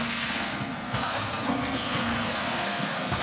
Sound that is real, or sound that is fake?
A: fake